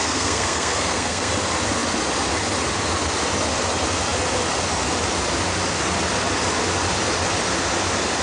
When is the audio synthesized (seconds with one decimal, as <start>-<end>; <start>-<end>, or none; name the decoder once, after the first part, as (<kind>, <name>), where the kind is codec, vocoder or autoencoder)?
0.0-1.3 (codec, SNAC)